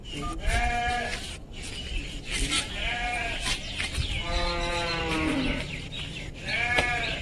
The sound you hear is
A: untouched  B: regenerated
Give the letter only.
A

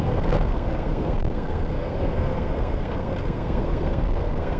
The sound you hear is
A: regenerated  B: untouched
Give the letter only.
A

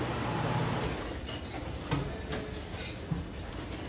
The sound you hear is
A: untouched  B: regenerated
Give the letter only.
A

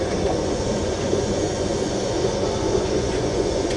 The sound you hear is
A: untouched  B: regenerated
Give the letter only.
B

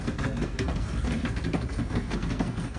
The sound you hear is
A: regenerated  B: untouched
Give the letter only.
A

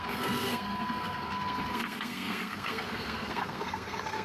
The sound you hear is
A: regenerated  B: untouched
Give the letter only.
A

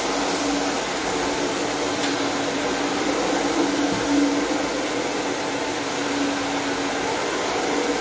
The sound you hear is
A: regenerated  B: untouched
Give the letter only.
B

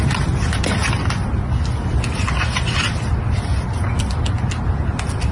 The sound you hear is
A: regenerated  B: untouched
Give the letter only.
B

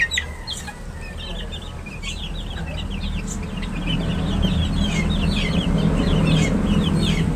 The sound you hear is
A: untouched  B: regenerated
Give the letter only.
A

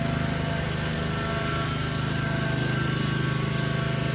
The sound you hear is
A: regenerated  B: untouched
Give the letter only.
B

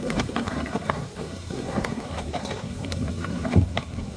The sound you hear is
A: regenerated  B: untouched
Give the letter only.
A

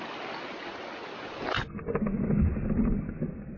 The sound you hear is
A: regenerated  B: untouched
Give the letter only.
B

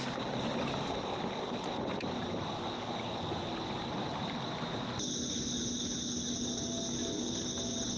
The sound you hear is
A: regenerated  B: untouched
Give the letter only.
B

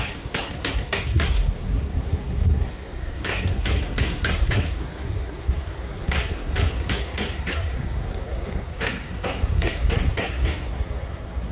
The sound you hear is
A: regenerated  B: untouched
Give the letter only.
A